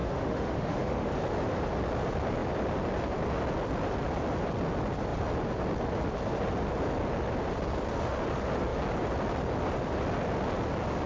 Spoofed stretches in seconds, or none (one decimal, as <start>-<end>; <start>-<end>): 0.0-1.1